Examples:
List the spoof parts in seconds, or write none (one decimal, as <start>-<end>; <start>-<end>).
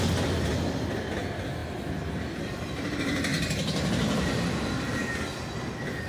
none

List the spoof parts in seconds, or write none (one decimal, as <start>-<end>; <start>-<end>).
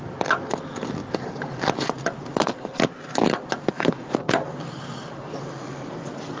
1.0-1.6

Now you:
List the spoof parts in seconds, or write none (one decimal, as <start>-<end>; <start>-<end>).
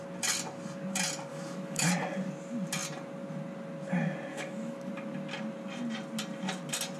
1.3-1.9; 4.3-4.9